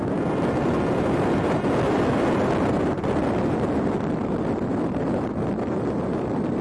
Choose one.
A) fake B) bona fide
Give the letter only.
B